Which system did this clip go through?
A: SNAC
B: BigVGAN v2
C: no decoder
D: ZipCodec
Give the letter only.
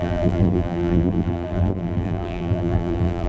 B